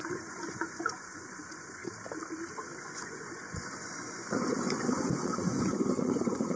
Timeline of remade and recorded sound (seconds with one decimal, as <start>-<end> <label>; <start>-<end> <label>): 0.0-1.8 remade; 1.8-2.5 recorded; 2.5-6.6 remade